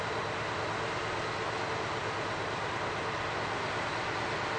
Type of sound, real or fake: real